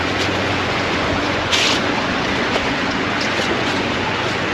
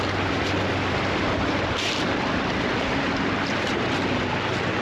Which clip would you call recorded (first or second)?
second